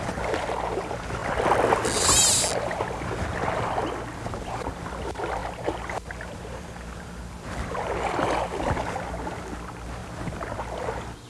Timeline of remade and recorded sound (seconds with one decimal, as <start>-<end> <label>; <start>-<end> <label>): 0.0-11.3 recorded